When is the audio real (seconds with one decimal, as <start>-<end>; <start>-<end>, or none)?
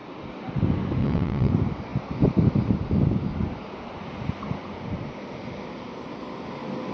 0.0-1.0; 1.5-6.9